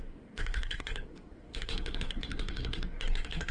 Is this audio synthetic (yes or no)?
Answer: yes